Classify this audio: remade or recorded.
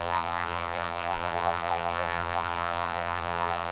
remade